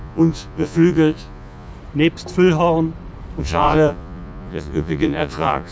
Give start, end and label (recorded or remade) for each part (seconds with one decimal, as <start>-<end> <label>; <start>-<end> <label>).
0.0-1.7 remade; 1.7-3.4 recorded; 3.4-5.7 remade